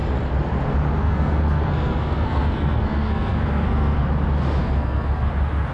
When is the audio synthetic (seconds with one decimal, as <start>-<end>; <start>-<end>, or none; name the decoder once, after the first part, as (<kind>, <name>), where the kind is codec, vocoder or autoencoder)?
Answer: 1.0-4.1 (codec, SNAC); 4.6-5.3